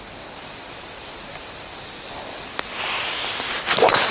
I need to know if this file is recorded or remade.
recorded